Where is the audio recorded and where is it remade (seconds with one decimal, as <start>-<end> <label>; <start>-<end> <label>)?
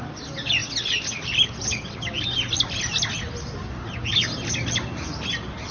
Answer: 0.0-5.7 recorded